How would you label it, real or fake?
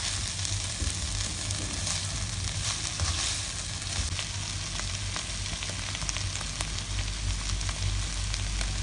real